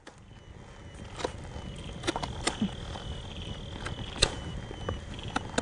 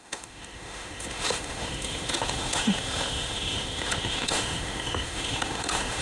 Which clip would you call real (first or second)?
first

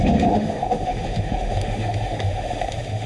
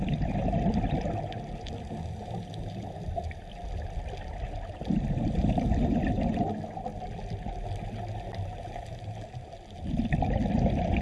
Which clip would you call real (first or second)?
second